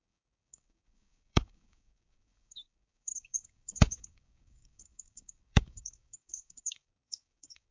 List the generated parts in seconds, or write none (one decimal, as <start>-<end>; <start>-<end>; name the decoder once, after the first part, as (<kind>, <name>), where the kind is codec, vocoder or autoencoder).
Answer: 0.0-7.7 (codec, DAC)